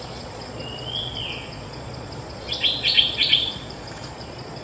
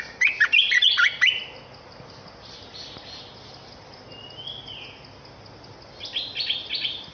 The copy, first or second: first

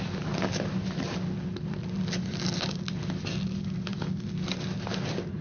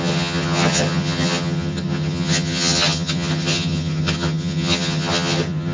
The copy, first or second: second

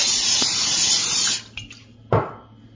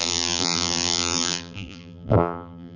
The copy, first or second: second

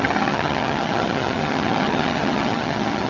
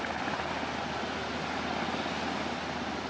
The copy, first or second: first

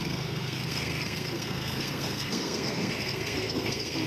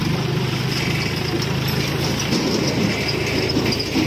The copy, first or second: first